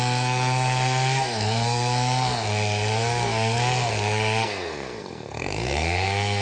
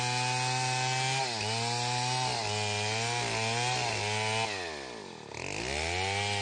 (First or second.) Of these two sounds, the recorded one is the second